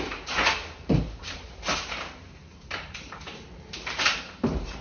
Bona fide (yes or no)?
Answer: no